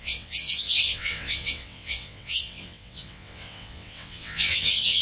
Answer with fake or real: fake